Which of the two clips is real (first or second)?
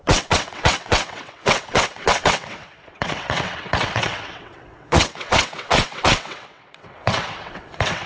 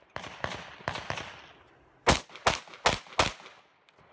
second